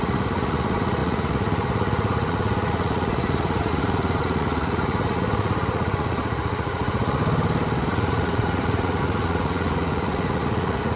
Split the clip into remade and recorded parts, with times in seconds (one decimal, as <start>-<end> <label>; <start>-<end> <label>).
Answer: 0.0-7.2 remade; 7.2-7.9 recorded; 7.9-11.0 remade